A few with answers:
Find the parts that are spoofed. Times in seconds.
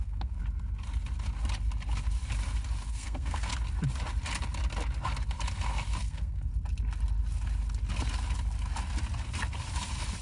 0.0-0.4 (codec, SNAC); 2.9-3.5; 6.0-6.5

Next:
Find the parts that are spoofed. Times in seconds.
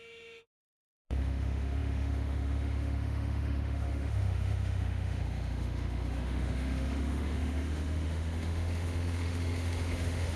0.0-10.4 (autoencoder, DAC-VAE)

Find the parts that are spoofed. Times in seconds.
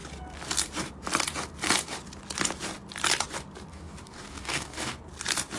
3.7-5.0 (codec, DAC)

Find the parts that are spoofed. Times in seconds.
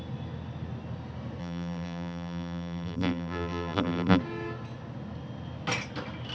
1.4-4.2 (vocoder, BigVGAN v2)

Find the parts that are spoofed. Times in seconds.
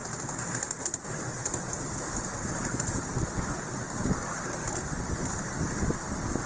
none